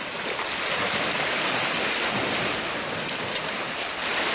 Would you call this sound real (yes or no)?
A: no